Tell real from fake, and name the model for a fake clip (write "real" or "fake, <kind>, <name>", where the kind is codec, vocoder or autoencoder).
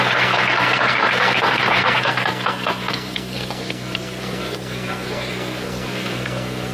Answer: fake, codec, SNAC